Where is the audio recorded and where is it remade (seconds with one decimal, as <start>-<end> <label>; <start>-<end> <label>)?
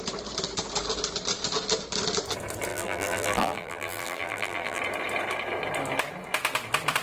0.0-2.7 recorded; 2.7-4.8 remade; 4.8-7.0 recorded